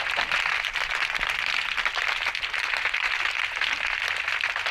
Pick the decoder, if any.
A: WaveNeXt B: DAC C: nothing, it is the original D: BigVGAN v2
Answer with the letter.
C